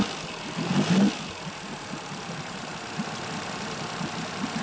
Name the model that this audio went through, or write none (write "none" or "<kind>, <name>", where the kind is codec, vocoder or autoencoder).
none